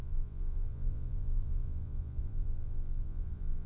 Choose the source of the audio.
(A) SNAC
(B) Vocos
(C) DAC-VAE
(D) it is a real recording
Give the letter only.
B